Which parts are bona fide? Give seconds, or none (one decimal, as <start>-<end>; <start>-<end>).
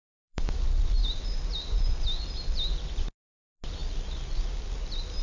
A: 0.6-5.2